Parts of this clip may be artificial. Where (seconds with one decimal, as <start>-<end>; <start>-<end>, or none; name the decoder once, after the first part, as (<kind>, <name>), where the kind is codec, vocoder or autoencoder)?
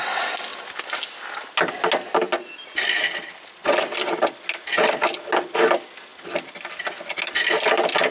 none